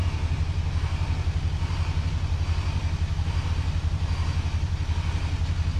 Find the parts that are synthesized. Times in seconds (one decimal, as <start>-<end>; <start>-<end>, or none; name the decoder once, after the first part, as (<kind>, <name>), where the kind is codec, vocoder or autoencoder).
none